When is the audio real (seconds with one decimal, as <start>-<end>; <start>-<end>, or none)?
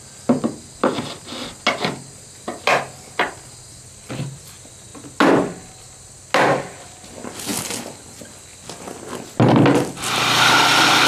0.0-11.1